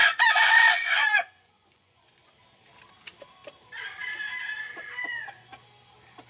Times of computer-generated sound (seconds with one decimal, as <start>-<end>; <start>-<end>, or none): 0.0-2.3